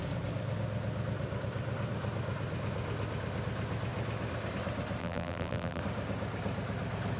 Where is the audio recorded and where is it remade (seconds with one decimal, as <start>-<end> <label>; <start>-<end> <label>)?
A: 0.0-5.0 recorded; 5.0-5.8 remade; 5.8-7.2 recorded